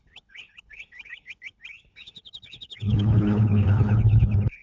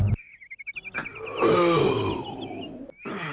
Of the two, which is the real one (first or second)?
second